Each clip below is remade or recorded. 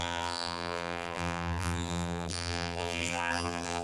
remade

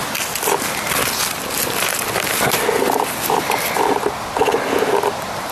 recorded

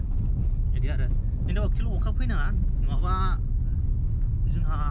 recorded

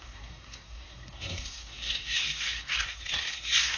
remade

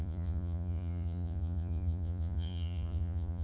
remade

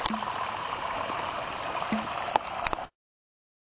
remade